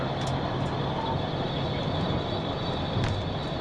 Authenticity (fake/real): real